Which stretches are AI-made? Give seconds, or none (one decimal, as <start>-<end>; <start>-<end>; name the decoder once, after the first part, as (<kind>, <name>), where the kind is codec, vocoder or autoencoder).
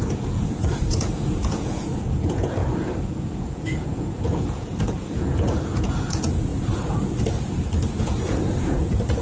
0.0-2.6 (vocoder, Vocos); 3.1-6.5; 8.0-9.2